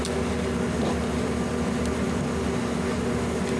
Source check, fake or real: real